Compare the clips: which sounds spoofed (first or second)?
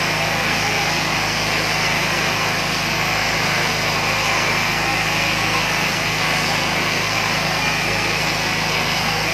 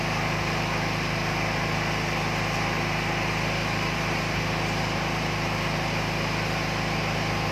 first